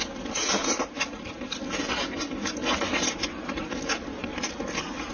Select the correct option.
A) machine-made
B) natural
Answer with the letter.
B